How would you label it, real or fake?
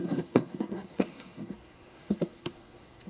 fake